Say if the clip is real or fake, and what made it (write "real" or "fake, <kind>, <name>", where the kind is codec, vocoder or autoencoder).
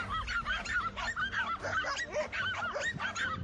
real